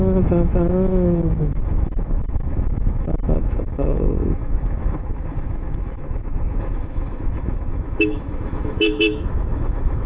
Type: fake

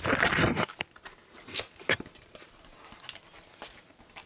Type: real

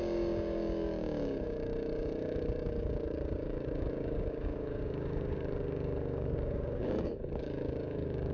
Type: fake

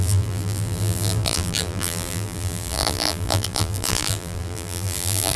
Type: fake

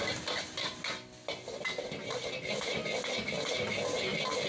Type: real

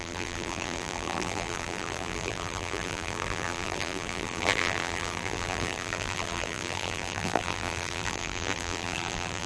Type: fake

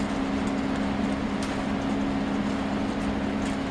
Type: real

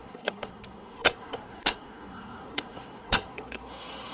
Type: fake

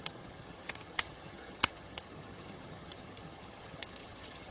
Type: fake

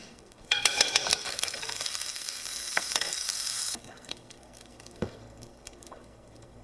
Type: fake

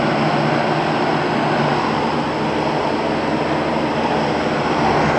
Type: real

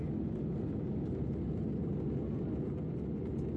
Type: real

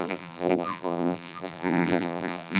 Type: fake